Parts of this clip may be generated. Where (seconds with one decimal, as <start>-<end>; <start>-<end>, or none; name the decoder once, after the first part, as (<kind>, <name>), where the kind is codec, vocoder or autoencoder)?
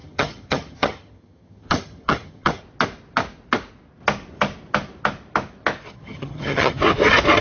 0.0-2.6 (vocoder, HiFi-GAN); 5.9-6.8